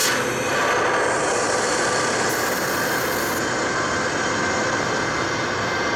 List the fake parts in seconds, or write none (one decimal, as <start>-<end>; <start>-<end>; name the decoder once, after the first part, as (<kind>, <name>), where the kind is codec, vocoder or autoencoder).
none